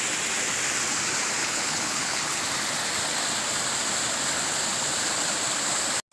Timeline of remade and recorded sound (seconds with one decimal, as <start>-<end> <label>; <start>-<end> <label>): 0.0-1.4 recorded; 1.4-2.4 remade; 2.4-6.1 recorded